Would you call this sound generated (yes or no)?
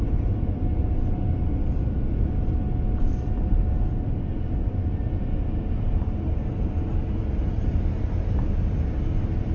no